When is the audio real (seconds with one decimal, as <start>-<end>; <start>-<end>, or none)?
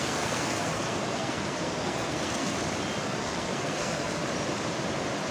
2.5-3.0; 4.2-5.3